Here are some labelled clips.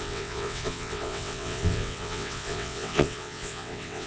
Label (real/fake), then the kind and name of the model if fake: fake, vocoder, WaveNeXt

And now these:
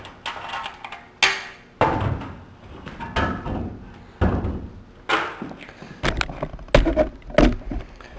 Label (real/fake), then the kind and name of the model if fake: real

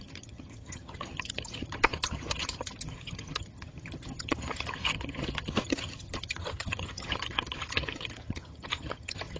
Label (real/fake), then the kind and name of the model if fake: fake, vocoder, HiFi-GAN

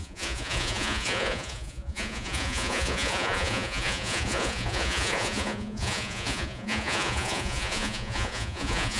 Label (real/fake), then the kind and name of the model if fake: fake, vocoder, Vocos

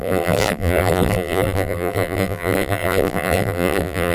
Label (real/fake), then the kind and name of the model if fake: fake, vocoder, BigVGAN v2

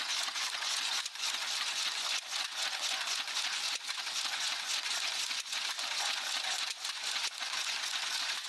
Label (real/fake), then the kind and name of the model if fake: fake, vocoder, Vocos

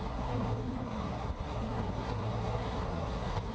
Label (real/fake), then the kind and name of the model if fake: fake, codec, SNAC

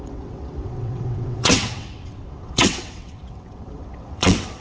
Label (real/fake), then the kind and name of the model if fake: fake, vocoder, WaveNeXt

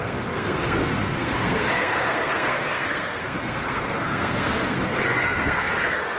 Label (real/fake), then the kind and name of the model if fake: fake, codec, SNAC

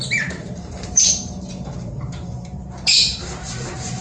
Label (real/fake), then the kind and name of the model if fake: fake, vocoder, BigVGAN v2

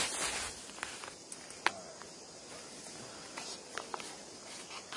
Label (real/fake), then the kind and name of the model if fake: real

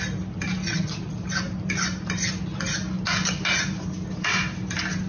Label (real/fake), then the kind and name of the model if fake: real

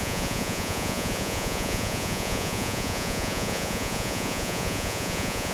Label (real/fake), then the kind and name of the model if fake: fake, vocoder, Vocos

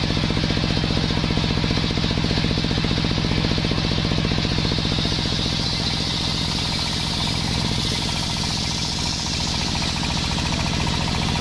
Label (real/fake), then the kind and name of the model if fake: real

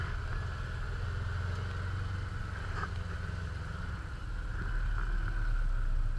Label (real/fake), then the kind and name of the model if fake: real